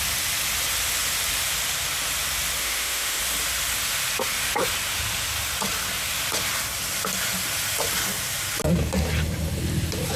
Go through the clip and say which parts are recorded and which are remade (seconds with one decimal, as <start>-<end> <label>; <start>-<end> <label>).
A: 0.0-2.6 recorded; 2.6-3.2 remade; 3.2-10.2 recorded